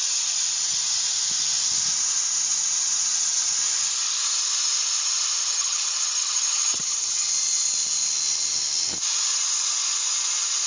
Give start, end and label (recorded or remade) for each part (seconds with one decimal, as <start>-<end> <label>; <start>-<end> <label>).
0.0-5.4 recorded; 5.4-7.3 remade; 7.3-10.7 recorded